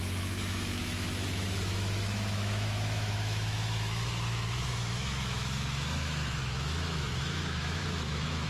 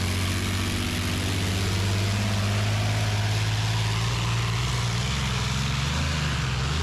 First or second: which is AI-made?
first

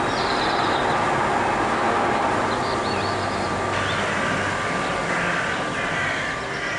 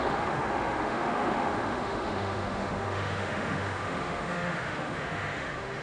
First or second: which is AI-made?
second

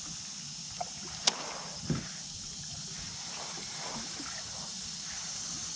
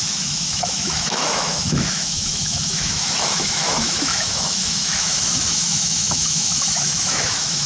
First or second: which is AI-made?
second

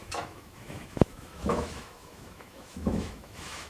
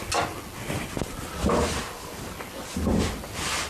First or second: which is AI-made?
first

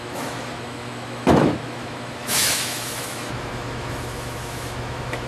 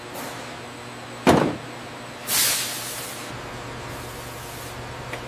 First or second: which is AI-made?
first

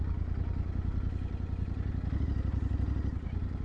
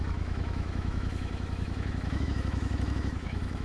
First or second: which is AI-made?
second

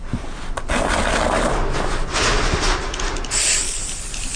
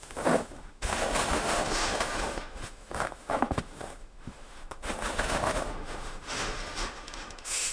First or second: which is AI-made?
second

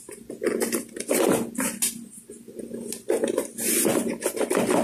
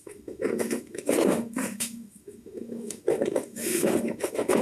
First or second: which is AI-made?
second